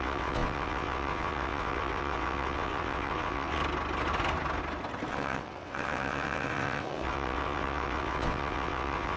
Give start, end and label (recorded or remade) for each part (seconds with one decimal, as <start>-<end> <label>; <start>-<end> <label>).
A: 0.0-3.6 remade; 3.6-5.1 recorded; 5.1-9.2 remade